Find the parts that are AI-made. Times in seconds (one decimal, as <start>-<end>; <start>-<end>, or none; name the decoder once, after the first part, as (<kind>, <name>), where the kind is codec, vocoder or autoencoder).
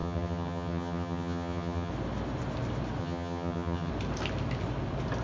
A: 0.0-1.9 (vocoder, HiFi-GAN); 3.0-3.9